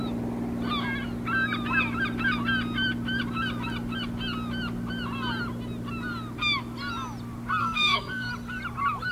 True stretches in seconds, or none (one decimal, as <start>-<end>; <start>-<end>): 0.0-7.6; 8.3-9.1